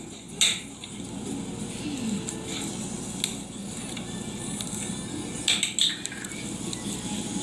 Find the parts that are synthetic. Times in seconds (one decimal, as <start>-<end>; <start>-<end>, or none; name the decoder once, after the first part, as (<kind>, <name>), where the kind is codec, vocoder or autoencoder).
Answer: none